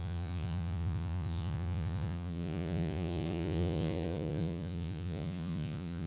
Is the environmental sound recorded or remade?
remade